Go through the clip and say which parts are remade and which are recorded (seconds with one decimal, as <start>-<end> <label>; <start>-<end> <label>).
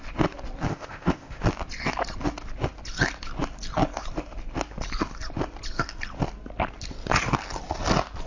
0.0-0.7 recorded; 0.7-1.4 remade; 1.4-8.3 recorded